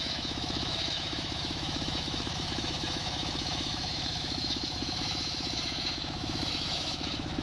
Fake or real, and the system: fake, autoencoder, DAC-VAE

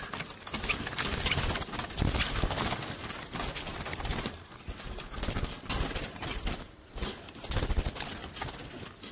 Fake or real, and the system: real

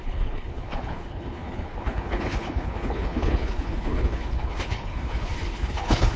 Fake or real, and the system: fake, codec, HILCodec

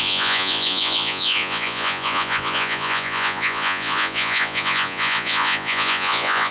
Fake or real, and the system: fake, vocoder, Vocos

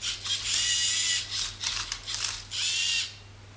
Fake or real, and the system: real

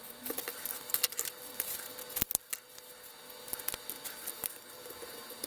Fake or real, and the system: real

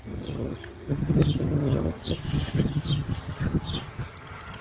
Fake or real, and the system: fake, vocoder, HiFi-GAN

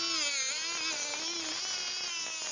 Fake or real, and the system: real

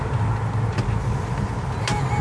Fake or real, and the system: real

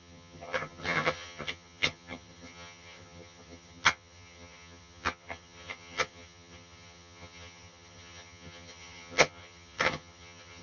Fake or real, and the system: fake, vocoder, HiFi-GAN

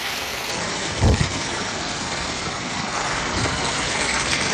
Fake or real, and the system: fake, codec, SNAC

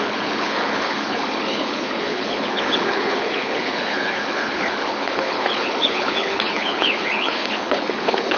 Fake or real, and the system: fake, codec, HILCodec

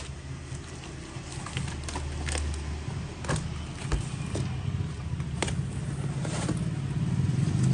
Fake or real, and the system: real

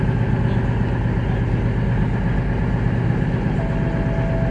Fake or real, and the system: real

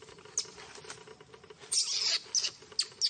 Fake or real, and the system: real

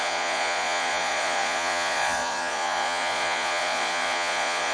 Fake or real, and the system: fake, vocoder, Vocos